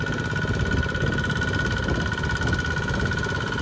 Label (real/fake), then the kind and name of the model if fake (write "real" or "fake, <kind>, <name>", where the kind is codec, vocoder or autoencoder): real